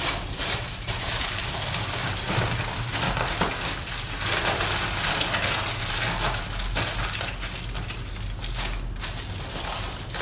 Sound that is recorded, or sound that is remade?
recorded